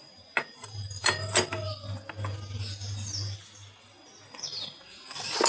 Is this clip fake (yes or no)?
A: no